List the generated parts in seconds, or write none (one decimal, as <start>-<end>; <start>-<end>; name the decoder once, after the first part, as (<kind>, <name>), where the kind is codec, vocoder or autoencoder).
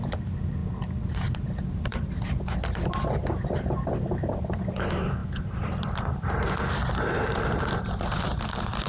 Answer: 0.0-0.6 (vocoder, BigVGAN v2); 1.8-8.9